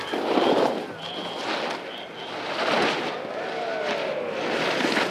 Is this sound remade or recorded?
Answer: recorded